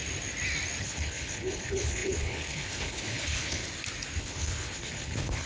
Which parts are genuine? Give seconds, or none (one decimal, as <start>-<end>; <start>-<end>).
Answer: 0.0-0.8; 3.6-4.2